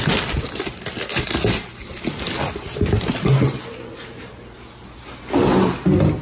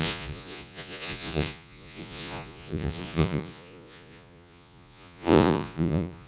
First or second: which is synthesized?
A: second